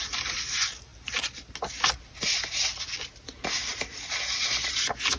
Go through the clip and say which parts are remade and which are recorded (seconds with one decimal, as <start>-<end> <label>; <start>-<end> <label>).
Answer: 0.0-5.2 recorded